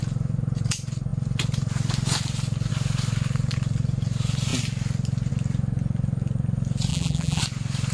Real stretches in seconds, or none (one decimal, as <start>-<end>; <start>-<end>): 0.0-6.9; 7.4-7.9